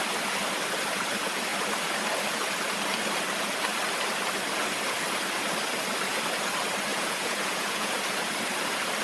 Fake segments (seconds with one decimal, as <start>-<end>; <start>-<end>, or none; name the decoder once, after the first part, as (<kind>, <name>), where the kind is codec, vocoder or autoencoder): 6.9-7.9 (vocoder, Vocos)